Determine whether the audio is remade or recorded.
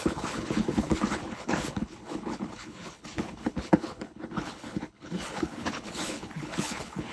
remade